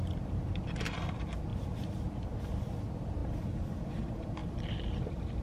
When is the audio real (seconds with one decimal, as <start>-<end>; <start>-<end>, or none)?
3.2-3.8